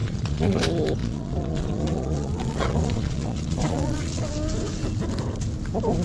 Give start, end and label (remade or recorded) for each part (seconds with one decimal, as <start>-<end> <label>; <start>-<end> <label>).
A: 0.0-0.6 remade; 0.6-1.0 recorded; 1.0-4.2 remade; 4.2-6.0 recorded